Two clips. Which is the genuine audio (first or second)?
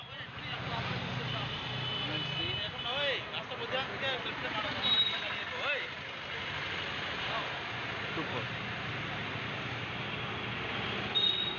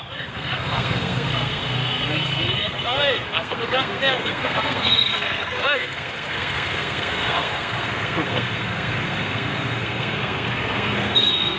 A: first